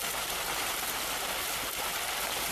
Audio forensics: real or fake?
real